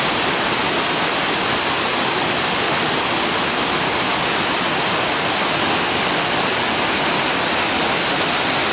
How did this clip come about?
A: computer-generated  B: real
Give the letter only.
B